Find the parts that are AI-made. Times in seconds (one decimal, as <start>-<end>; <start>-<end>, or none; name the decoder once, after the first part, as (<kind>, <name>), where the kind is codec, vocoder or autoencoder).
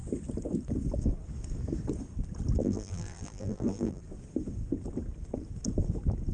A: 2.6-4.0 (vocoder, BigVGAN v2)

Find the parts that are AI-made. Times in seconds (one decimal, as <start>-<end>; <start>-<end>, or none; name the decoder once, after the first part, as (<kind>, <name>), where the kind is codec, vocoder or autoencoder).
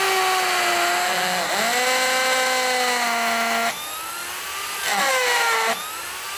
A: 4.2-5.0 (vocoder, BigVGAN v2)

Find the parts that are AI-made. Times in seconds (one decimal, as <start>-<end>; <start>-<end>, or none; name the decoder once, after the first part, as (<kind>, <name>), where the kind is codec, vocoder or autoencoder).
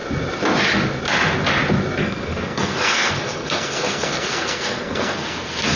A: 2.0-5.8 (codec, SNAC)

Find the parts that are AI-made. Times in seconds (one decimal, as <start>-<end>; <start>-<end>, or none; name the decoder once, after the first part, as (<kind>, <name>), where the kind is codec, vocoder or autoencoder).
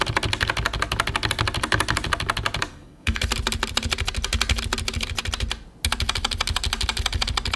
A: 2.7-3.2 (codec, SNAC)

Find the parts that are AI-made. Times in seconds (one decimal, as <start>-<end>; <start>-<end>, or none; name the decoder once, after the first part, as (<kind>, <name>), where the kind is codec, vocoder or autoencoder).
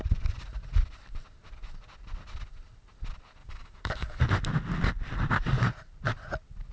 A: 3.4-4.2 (codec, DAC)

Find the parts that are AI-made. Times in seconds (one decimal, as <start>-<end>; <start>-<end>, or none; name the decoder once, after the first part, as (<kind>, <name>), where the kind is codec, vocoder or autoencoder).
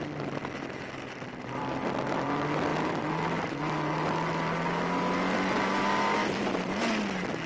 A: none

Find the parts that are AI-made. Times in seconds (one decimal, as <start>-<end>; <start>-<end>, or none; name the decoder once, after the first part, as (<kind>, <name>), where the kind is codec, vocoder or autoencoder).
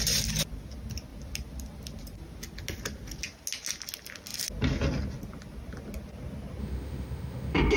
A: 6.6-7.8 (autoencoder, DAC-VAE)